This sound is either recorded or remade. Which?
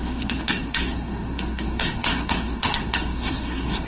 remade